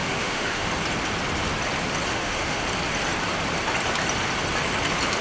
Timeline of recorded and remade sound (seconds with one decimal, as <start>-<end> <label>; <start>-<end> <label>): 0.0-0.7 remade; 0.7-2.1 recorded; 2.1-2.6 remade; 2.6-5.2 recorded